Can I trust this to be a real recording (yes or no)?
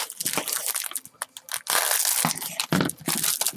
yes